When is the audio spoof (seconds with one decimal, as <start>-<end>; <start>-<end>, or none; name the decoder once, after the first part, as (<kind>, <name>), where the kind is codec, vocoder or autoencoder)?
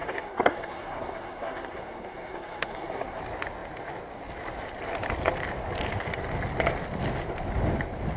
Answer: 0.0-3.2 (codec, SNAC)